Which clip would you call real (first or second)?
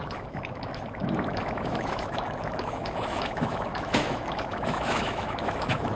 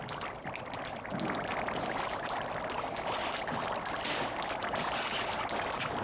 second